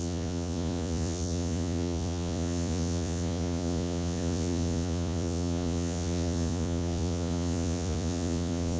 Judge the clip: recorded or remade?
remade